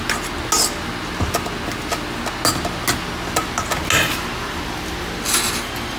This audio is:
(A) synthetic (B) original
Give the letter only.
B